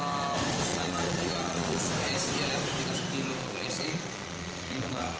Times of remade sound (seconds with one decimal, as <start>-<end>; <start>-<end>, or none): 0.7-1.9; 3.4-5.2